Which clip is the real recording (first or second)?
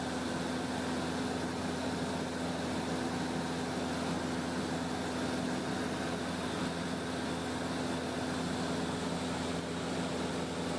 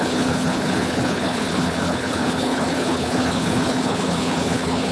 first